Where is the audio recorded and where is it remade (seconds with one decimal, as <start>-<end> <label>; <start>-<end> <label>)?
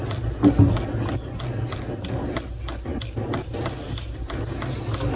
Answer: 0.0-5.2 recorded